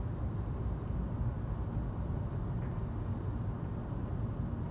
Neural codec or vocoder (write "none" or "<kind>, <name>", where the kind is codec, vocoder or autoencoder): none